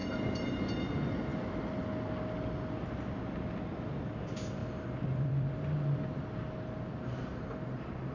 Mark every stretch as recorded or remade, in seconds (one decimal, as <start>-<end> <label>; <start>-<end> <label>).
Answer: 0.0-0.5 remade; 0.5-4.6 recorded; 4.6-6.2 remade; 6.2-7.3 recorded; 7.3-8.1 remade